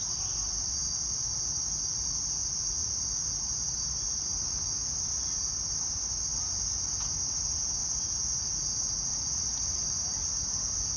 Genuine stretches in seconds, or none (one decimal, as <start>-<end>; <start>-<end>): 0.0-2.4; 3.5-7.8; 9.7-11.0